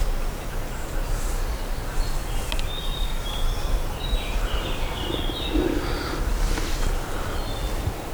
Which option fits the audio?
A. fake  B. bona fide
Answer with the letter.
B